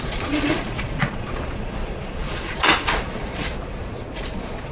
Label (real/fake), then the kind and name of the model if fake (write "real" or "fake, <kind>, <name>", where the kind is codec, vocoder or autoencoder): fake, vocoder, Vocos